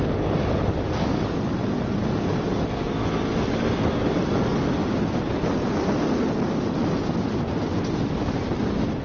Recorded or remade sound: recorded